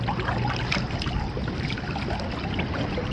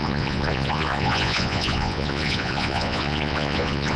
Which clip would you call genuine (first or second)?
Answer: first